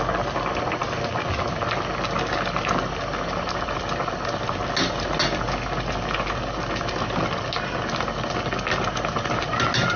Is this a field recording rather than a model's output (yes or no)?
yes